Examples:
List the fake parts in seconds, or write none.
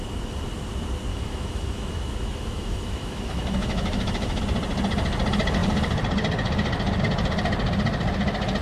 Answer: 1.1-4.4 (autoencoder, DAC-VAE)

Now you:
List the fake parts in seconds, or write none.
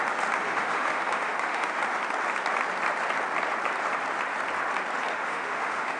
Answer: 0.4-1.8 (autoencoder, DAC-VAE); 5.1-6.0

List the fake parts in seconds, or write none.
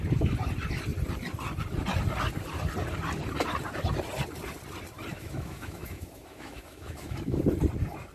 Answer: 5.1-7.4 (autoencoder, DAC-VAE)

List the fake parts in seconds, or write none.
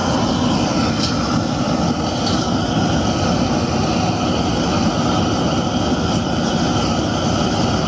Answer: none